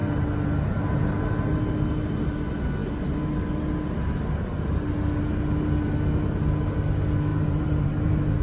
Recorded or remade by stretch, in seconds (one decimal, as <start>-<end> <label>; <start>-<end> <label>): 0.0-7.3 recorded; 7.3-8.4 remade